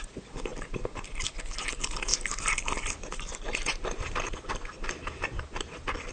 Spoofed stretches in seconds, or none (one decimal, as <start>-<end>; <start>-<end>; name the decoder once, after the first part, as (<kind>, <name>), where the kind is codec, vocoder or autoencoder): none